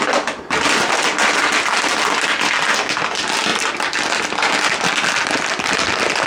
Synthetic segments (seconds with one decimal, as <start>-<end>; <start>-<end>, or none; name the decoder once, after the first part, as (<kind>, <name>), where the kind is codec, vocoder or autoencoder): none